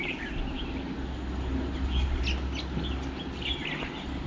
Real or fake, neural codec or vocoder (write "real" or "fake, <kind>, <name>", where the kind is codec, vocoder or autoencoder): real